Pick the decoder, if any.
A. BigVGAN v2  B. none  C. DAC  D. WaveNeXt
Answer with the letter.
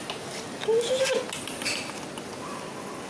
B